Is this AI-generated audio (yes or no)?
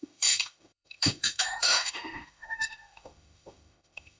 yes